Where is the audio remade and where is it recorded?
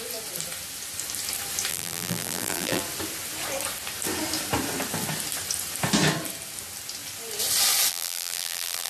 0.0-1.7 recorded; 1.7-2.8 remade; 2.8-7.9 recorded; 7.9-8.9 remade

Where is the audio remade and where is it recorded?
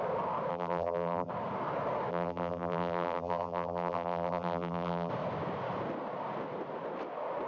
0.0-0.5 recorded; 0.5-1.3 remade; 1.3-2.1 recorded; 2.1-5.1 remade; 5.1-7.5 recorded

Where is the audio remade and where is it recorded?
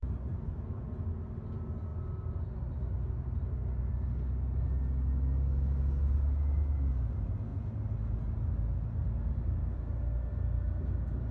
0.0-9.0 recorded; 9.0-10.0 remade; 10.0-11.3 recorded